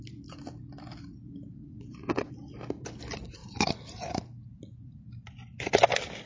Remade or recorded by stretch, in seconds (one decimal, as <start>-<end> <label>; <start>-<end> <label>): 0.0-1.6 recorded; 1.6-2.3 remade; 2.3-6.3 recorded